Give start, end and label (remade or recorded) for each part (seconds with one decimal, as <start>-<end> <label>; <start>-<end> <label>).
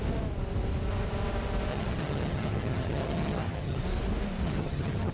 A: 0.0-1.7 recorded; 1.7-3.8 remade; 3.8-4.4 recorded; 4.4-5.1 remade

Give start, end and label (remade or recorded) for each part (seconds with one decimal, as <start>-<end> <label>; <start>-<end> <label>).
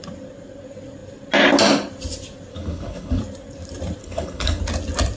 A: 0.0-2.5 recorded; 2.5-3.2 remade; 3.2-4.0 recorded; 4.0-4.6 remade; 4.6-5.2 recorded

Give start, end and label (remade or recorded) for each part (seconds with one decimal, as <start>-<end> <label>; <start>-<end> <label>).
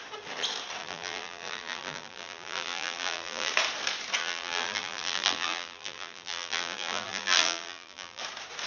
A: 0.0-0.8 recorded; 0.8-3.5 remade; 3.5-4.2 recorded; 4.2-8.2 remade; 8.2-8.7 recorded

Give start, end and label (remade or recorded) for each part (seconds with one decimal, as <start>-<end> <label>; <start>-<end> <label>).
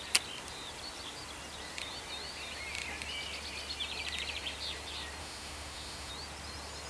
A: 0.0-5.2 recorded; 5.2-6.1 remade; 6.1-6.9 recorded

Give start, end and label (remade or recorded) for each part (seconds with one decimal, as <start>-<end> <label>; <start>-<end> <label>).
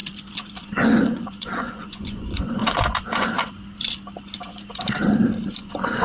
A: 0.0-0.6 recorded; 0.6-2.6 remade; 2.6-5.6 recorded; 5.6-6.0 remade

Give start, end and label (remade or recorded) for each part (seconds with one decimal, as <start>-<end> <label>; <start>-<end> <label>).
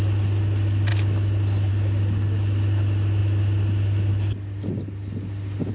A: 0.0-5.7 recorded